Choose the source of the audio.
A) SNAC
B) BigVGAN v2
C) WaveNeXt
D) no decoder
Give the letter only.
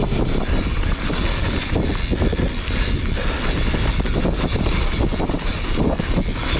D